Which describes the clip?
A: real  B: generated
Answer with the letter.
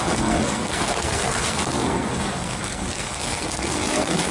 B